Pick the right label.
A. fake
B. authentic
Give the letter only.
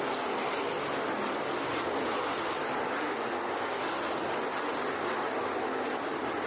B